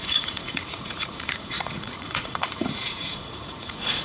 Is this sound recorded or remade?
remade